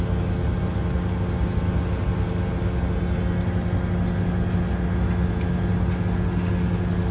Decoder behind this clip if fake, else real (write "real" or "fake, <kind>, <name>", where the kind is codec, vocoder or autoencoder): real